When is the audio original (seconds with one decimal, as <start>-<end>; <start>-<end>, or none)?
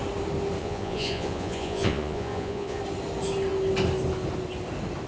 0.0-0.6; 2.8-5.1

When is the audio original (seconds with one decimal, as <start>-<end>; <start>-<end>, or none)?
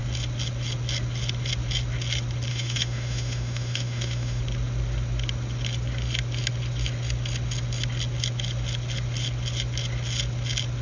0.0-2.5; 4.4-10.8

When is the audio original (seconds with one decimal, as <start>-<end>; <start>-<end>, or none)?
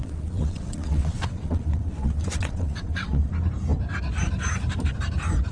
3.3-5.5